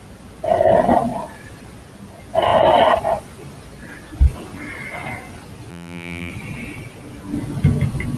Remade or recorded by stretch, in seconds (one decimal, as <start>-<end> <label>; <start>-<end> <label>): 0.0-5.7 recorded; 5.7-6.3 remade; 6.3-8.2 recorded